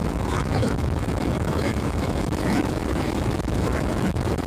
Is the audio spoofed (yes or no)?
yes